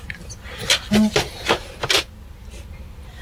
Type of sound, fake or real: real